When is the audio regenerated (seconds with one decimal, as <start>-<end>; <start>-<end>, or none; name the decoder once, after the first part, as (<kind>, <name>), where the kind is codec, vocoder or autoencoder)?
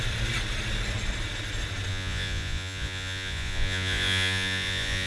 1.9-5.1 (vocoder, Vocos)